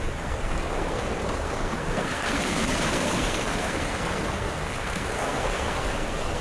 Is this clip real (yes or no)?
no